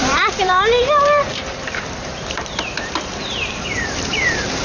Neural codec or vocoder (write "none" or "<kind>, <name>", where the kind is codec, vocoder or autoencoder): vocoder, BigVGAN v2